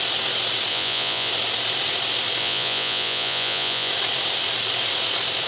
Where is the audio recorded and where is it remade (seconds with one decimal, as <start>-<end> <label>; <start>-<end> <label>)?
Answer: 0.0-0.7 recorded; 0.7-1.3 remade; 1.3-2.4 recorded; 2.4-3.9 remade; 3.9-5.5 recorded